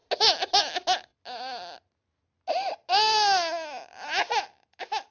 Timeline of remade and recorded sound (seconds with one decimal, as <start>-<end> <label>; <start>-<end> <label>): 0.0-5.1 recorded